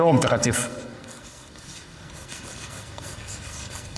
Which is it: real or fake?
fake